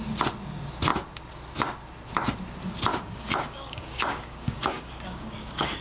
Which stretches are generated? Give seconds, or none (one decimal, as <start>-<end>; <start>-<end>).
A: 2.9-5.8